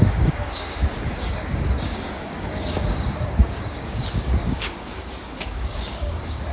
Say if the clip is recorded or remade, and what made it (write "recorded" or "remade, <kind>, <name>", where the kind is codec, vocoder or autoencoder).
remade, codec, DAC